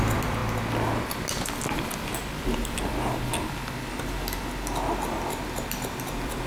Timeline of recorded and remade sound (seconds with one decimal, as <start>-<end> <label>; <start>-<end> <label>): 0.0-0.4 remade; 0.4-1.6 recorded; 1.6-2.2 remade; 2.2-6.1 recorded; 6.1-6.5 remade